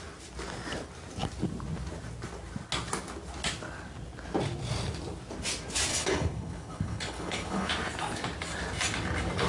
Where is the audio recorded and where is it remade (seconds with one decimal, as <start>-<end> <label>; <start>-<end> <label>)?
0.0-5.9 recorded; 5.9-7.7 remade; 7.7-9.5 recorded